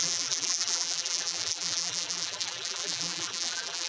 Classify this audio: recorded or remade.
remade